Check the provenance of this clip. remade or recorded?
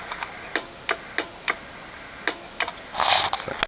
recorded